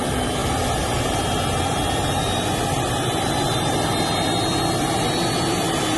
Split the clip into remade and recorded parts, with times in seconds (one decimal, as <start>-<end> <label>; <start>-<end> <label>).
0.0-6.0 recorded